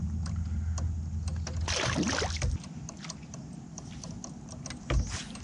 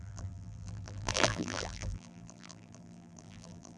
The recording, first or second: first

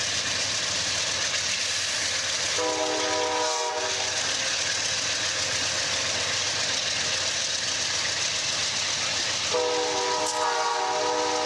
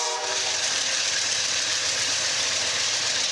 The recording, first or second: first